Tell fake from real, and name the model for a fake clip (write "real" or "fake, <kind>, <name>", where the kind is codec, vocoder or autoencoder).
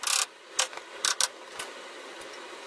real